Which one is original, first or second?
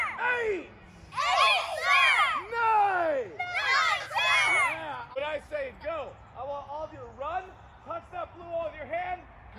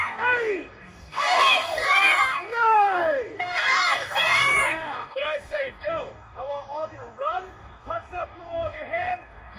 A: first